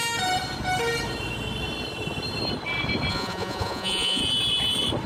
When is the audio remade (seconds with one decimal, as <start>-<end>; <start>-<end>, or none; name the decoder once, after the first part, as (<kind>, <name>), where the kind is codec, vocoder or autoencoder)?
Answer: 3.1-4.2 (vocoder, Vocos)